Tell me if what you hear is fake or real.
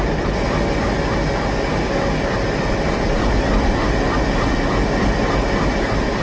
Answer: real